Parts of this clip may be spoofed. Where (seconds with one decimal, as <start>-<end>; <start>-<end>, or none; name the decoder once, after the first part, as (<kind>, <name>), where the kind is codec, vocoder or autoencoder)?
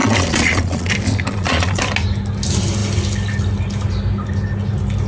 0.0-0.9 (vocoder, Vocos); 1.3-1.8